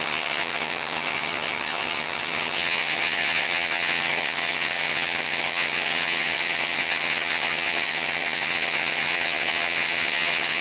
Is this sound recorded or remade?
remade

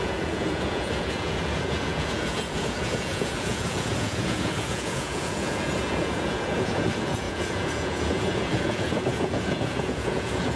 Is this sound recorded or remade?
remade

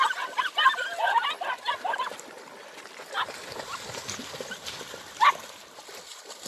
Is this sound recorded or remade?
recorded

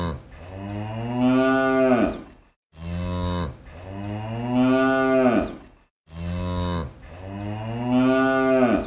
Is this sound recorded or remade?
recorded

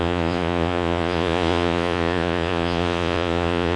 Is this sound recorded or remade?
remade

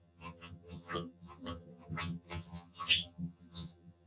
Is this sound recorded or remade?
remade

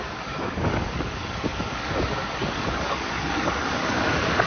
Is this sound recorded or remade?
remade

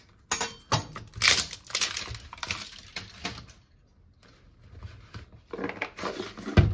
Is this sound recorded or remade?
recorded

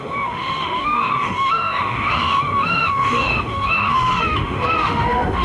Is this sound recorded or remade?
remade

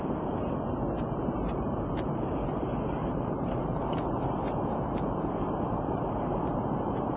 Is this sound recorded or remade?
remade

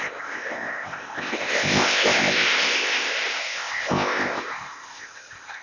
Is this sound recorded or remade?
remade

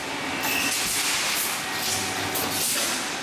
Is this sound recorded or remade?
recorded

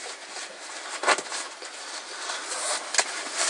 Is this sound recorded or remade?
recorded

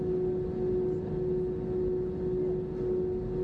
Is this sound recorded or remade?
recorded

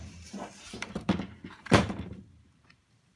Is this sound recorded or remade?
remade